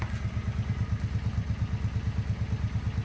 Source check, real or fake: real